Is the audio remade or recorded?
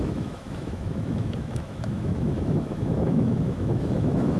remade